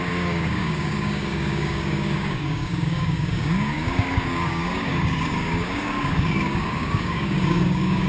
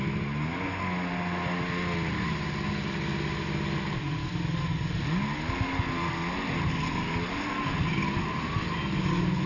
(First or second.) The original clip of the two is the second